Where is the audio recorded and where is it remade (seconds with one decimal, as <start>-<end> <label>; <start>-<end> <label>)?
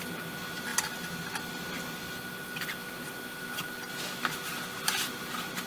0.0-5.7 recorded